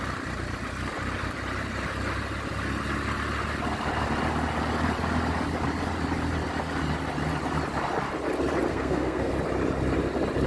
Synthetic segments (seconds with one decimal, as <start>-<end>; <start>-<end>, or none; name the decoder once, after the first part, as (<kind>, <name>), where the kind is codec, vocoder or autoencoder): 8.7-9.3 (codec, SNAC)